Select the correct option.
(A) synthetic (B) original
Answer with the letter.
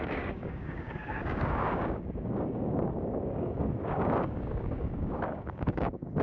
A